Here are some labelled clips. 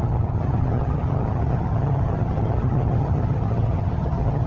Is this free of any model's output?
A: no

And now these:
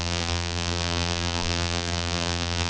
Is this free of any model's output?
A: no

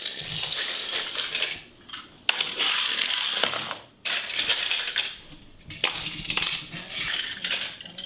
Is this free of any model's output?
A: yes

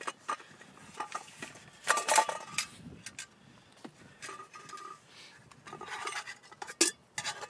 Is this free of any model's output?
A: yes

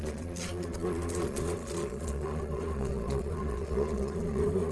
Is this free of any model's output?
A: no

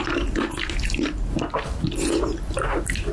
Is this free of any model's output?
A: yes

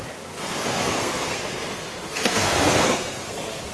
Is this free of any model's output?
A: no